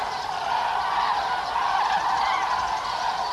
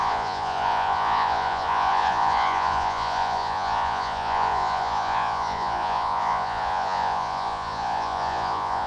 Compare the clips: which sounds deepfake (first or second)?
second